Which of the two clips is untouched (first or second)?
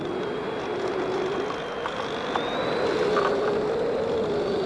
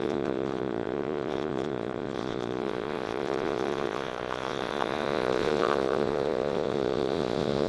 first